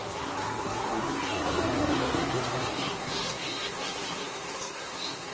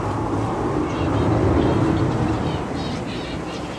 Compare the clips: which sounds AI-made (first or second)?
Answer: first